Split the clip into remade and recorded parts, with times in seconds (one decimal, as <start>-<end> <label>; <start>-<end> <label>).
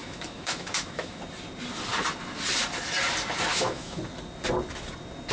0.0-1.2 remade; 1.2-3.5 recorded; 3.5-4.0 remade; 4.0-5.3 recorded